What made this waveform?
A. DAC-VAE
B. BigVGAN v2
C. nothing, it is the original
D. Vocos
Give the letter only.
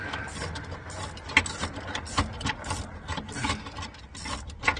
C